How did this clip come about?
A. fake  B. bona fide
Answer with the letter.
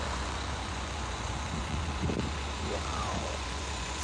A